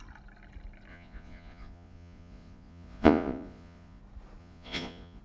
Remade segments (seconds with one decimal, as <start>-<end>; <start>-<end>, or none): 0.9-4.0; 4.4-5.2